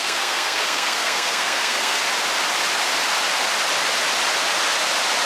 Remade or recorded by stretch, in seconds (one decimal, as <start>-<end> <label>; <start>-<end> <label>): 0.0-2.0 remade; 2.0-5.3 recorded